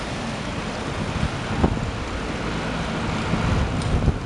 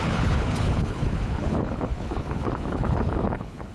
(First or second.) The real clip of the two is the first